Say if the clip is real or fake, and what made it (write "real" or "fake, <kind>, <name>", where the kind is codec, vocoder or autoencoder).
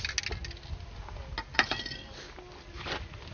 real